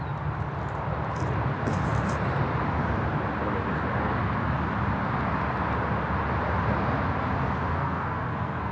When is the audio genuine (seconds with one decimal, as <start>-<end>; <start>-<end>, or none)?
0.0-7.7